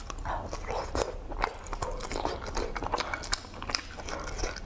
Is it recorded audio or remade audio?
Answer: recorded